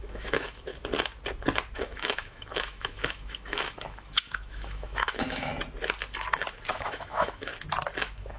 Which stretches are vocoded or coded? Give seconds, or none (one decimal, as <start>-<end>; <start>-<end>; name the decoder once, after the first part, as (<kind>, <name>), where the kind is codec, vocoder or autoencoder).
0.0-0.7 (autoencoder, DAC-VAE); 1.7-5.5; 6.7-7.5; 8.0-8.4